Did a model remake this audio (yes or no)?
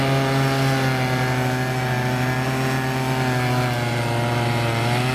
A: no